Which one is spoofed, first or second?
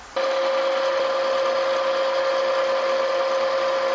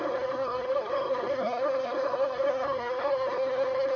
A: second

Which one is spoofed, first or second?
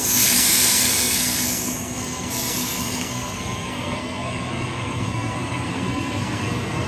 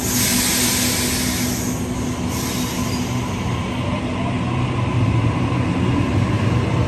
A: first